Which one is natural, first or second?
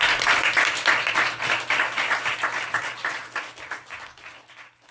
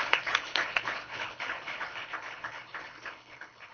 first